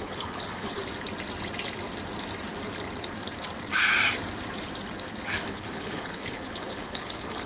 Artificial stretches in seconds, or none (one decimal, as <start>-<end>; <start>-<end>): 0.0-0.8; 5.3-7.5